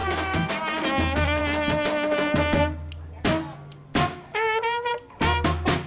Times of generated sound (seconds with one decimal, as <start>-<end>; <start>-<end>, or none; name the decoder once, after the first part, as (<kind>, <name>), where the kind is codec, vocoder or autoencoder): 0.0-0.5 (codec, DAC)

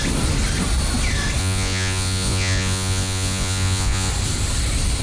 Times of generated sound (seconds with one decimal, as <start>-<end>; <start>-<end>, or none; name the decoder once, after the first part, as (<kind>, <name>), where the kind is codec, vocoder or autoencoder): 1.4-4.1 (vocoder, Vocos)

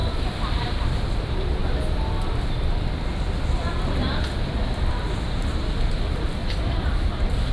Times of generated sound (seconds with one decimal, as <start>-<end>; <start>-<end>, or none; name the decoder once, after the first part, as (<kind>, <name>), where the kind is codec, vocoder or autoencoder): 1.0-1.6 (vocoder, BigVGAN v2); 4.9-7.5

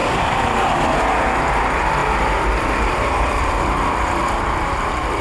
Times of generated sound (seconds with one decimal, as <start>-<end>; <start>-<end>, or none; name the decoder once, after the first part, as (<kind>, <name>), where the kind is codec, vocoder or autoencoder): 0.0-0.7 (vocoder, BigVGAN v2); 2.0-5.2

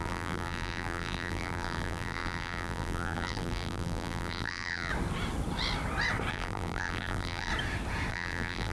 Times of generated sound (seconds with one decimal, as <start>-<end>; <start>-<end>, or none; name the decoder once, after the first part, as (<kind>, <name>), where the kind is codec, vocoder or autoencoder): 0.0-4.9 (vocoder, BigVGAN v2); 6.3-7.5; 8.1-8.7